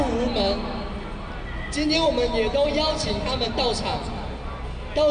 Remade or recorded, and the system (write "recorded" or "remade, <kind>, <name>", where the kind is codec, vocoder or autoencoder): recorded